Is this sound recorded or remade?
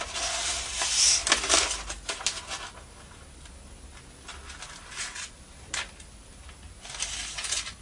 recorded